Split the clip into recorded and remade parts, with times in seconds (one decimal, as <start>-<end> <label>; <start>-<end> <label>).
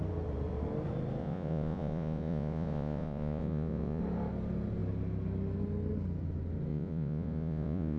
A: 0.0-1.2 recorded; 1.2-4.0 remade; 4.0-6.7 recorded; 6.7-8.0 remade